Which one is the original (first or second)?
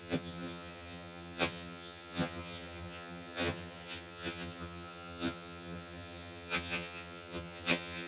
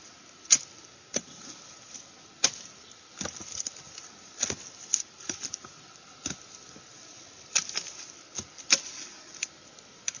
second